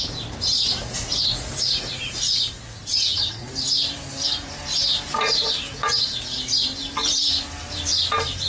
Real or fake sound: fake